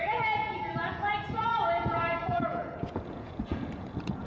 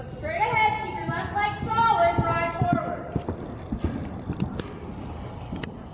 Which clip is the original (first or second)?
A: second